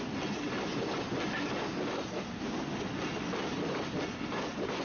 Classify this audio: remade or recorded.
recorded